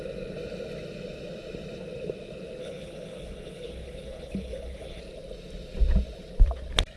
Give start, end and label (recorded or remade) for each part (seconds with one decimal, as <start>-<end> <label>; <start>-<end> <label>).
0.0-2.6 recorded; 2.6-5.0 remade; 5.0-7.0 recorded